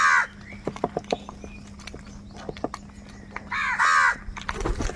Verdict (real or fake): real